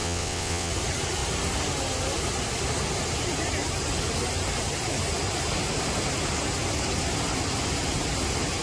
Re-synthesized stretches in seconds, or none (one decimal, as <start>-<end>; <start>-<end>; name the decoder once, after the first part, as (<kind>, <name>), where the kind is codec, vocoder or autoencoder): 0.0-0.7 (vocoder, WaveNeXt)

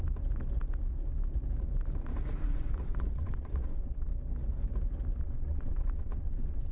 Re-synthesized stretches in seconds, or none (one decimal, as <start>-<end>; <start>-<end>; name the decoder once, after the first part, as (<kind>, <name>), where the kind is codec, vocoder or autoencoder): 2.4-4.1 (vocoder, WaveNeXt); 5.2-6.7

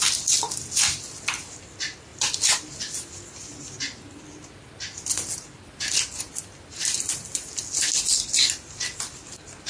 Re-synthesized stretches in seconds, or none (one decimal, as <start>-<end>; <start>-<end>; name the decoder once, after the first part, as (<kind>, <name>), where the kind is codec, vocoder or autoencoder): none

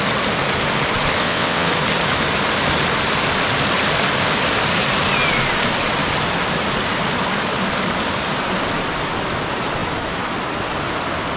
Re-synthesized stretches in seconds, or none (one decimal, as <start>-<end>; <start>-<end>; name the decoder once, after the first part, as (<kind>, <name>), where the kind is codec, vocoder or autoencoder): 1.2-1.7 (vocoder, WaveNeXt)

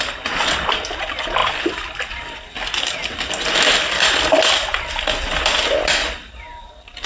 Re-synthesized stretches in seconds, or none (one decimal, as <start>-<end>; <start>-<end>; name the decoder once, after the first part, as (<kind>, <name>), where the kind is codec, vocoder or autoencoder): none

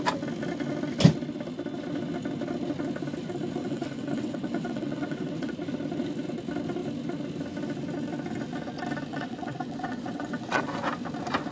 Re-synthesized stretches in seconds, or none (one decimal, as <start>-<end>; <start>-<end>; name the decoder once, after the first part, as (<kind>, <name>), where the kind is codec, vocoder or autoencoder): 3.6-5.5 (vocoder, WaveNeXt); 9.1-10.6

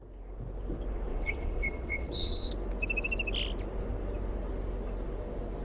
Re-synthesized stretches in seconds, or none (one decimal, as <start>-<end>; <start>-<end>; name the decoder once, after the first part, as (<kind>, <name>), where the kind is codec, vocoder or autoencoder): 1.1-2.5 (vocoder, WaveNeXt)

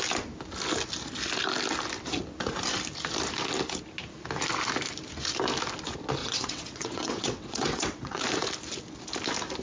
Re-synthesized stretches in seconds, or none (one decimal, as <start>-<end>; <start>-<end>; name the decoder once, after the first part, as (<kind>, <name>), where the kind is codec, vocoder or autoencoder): 6.2-8.2 (vocoder, WaveNeXt)